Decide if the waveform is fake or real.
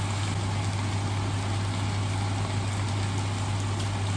real